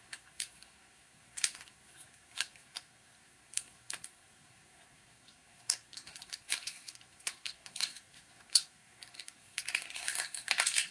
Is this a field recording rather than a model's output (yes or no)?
no